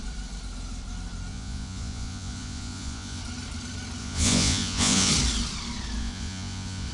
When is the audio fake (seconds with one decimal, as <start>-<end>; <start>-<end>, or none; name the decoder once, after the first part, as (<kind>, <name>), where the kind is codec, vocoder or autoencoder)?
1.3-3.2 (vocoder, Vocos); 4.0-5.1; 6.0-6.9

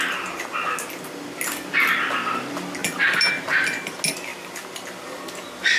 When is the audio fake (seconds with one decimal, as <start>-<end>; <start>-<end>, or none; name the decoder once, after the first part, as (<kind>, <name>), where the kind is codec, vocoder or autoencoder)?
2.8-3.3 (vocoder, BigVGAN v2); 4.3-5.3

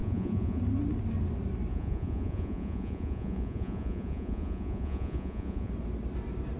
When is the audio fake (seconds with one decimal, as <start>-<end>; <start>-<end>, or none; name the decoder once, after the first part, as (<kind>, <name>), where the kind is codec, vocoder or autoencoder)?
0.0-0.6 (vocoder, Vocos); 1.7-5.7

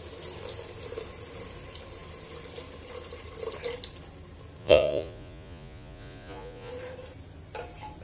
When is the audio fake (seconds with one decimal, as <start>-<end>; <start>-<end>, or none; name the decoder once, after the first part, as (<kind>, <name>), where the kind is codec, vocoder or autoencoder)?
4.6-6.7 (vocoder, Vocos)

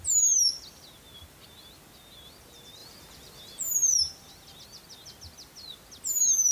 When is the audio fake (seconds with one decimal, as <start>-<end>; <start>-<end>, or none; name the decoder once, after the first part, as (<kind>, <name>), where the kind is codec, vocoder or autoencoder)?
none

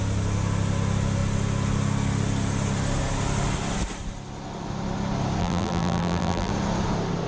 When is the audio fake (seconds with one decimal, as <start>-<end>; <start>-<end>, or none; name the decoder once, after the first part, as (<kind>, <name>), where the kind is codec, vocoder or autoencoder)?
5.4-6.5 (vocoder, BigVGAN v2)

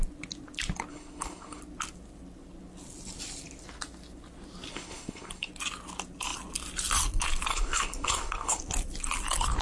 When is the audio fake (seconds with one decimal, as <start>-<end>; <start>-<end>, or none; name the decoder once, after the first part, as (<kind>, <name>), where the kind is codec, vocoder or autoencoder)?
0.9-1.6 (codec, HILCodec); 4.7-5.5; 7.5-8.6

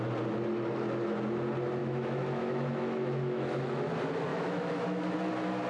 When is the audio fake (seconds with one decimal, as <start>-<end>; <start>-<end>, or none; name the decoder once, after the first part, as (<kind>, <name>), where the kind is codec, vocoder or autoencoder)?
1.8-3.9 (autoencoder, DAC-VAE); 4.3-5.3